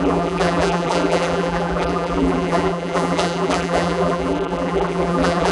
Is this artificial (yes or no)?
yes